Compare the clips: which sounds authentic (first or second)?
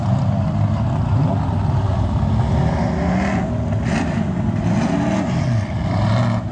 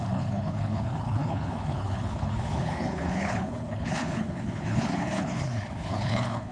first